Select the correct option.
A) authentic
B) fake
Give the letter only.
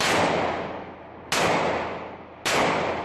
A